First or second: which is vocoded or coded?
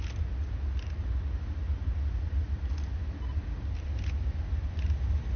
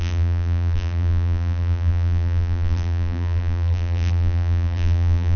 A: second